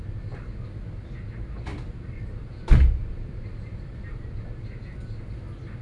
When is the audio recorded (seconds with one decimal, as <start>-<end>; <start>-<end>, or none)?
0.0-1.7; 4.2-5.8